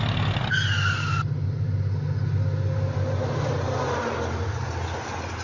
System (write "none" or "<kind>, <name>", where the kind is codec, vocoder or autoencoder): none